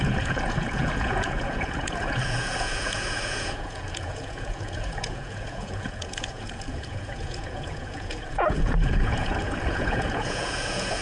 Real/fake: fake